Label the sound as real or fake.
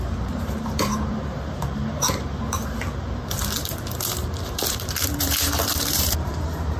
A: fake